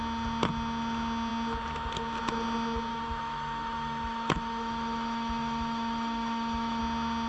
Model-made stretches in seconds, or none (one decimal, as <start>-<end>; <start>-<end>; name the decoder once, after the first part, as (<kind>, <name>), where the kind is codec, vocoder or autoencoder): 2.9-6.8 (autoencoder, DAC-VAE)